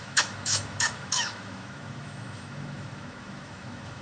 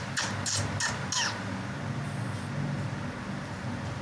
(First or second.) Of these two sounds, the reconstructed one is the first